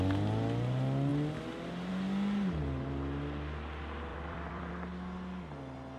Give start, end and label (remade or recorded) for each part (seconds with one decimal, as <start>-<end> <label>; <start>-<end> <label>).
0.0-4.1 recorded; 4.1-4.7 remade; 4.7-6.0 recorded